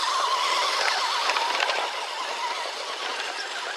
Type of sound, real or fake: real